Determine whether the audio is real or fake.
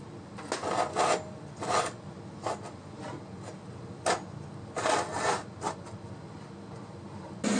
real